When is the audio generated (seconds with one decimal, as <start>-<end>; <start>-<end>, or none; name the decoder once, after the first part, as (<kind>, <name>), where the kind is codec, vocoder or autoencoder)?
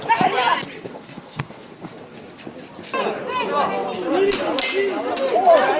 0.9-2.0 (codec, SNAC)